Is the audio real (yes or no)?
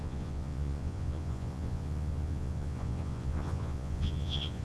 no